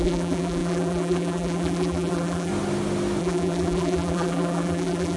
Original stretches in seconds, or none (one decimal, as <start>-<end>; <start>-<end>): 2.5-3.2